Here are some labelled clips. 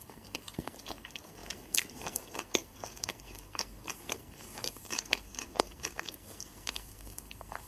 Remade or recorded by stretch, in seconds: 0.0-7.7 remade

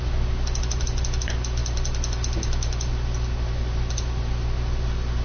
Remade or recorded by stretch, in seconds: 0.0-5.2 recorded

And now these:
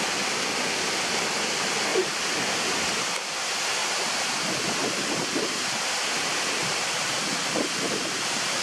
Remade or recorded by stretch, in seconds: 0.0-1.9 recorded; 1.9-2.6 remade; 2.6-3.8 recorded; 3.8-4.5 remade; 4.5-6.6 recorded; 6.6-7.2 remade; 7.2-8.6 recorded

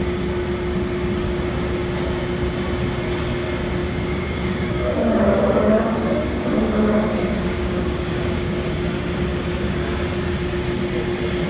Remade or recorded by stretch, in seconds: 0.0-3.8 recorded; 3.8-8.7 remade; 8.7-9.3 recorded; 9.3-10.0 remade; 10.0-11.5 recorded